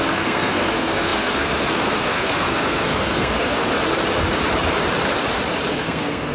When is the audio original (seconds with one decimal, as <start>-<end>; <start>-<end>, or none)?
3.6-5.7